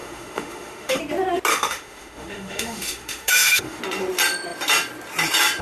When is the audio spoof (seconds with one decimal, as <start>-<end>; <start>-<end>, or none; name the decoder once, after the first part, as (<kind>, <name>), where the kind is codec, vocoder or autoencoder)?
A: 0.0-1.0 (autoencoder, DAC-VAE); 1.5-3.8